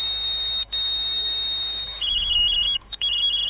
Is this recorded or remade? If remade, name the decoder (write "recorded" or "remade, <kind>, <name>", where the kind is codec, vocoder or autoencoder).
remade, codec, DAC